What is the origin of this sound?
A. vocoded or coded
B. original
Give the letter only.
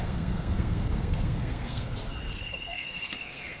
A